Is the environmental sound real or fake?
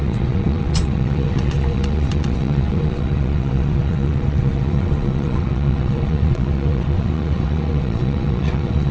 fake